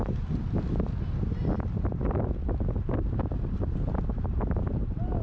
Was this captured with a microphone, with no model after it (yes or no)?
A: yes